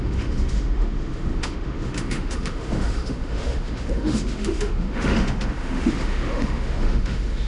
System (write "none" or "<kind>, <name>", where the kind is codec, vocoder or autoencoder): autoencoder, DAC-VAE